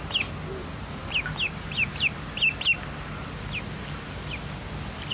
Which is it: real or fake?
real